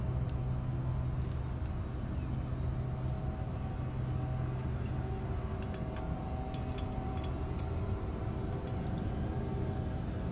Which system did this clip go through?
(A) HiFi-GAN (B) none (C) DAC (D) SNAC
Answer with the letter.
B